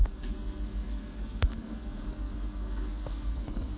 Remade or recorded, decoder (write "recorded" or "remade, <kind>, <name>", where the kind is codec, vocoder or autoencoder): remade, codec, SNAC